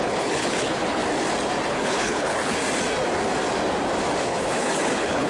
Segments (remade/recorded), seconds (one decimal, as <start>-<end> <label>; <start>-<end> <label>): 0.0-1.0 remade; 1.0-1.7 recorded; 1.7-2.6 remade; 2.6-4.2 recorded; 4.2-5.3 remade